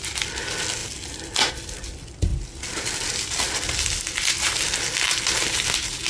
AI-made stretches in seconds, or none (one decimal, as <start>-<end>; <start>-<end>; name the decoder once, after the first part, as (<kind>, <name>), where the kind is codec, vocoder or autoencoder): none